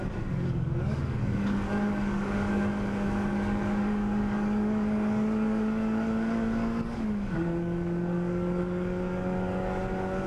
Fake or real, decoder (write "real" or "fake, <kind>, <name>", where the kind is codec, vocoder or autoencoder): fake, codec, DAC